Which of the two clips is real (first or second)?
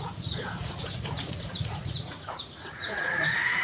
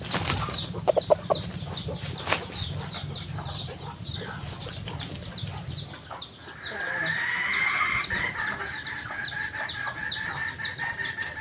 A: second